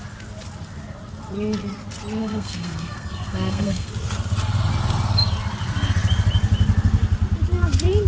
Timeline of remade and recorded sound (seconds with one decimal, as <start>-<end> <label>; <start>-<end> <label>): 0.0-2.2 recorded; 2.2-3.9 remade; 3.9-8.1 recorded